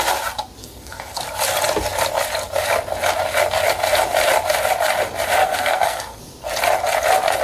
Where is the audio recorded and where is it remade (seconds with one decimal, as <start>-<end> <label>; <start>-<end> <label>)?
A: 0.0-0.6 recorded; 0.6-1.2 remade; 1.2-5.4 recorded; 5.4-6.2 remade; 6.2-7.4 recorded